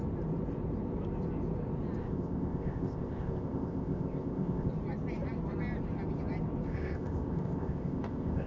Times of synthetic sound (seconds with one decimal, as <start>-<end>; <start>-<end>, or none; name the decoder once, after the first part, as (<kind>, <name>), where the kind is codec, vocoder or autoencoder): 2.0-4.7 (codec, ZipCodec); 6.7-8.5